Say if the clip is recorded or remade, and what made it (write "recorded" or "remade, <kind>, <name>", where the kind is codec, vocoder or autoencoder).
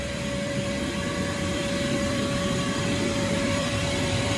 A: remade, vocoder, BigVGAN v2